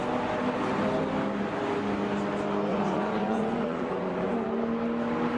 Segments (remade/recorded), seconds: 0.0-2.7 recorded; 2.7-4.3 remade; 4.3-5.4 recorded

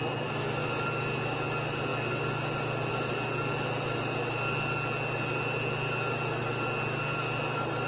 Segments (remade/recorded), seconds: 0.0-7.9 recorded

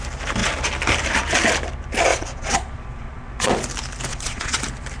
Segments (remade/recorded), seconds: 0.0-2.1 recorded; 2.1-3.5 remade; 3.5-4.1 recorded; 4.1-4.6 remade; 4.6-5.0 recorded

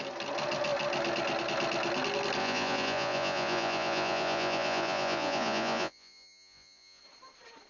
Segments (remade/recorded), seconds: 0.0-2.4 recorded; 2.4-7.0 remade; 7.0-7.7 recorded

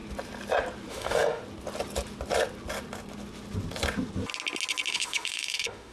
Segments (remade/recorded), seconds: 0.0-0.9 recorded; 0.9-1.4 remade; 1.4-4.9 recorded; 4.9-5.9 remade